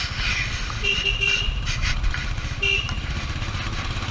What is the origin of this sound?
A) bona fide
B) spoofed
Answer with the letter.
B